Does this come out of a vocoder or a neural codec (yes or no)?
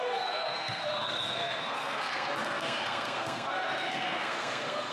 yes